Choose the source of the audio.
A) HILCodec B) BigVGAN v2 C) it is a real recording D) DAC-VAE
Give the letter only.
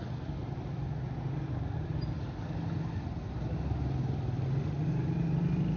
C